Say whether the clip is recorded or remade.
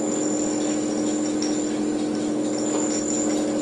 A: recorded